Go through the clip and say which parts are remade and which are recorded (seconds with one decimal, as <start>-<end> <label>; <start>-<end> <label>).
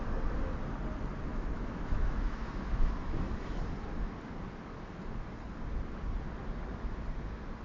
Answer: 0.0-1.3 recorded; 1.3-3.2 remade; 3.2-7.6 recorded